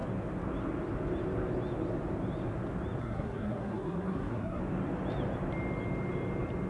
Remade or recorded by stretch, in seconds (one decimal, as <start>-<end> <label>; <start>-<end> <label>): 0.0-3.0 recorded; 3.0-4.6 remade; 4.6-6.7 recorded